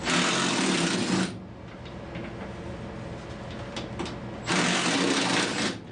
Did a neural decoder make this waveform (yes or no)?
no